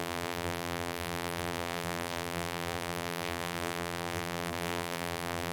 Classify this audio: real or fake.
fake